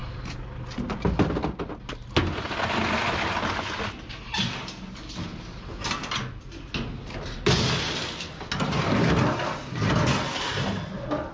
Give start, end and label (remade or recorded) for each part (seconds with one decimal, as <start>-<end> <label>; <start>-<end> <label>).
0.0-11.3 recorded